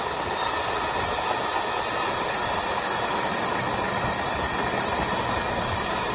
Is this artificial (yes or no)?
no